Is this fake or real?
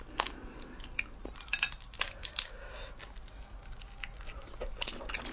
real